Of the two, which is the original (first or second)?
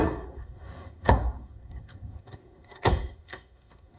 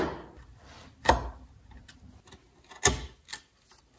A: second